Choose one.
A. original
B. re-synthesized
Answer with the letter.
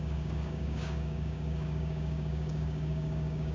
B